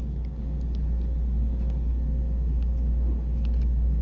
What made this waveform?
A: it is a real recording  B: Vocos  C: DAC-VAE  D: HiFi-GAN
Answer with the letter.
A